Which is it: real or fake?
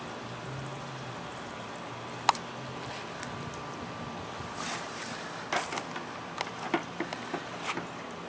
real